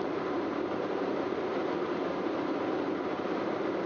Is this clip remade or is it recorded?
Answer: remade